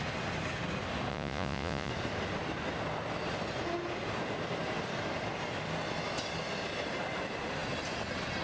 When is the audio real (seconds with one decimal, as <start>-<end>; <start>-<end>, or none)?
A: 0.0-1.1; 1.9-8.4